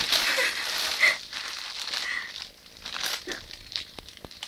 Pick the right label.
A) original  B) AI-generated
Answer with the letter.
A